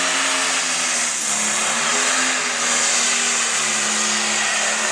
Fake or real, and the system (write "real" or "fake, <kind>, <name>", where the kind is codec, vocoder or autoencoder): real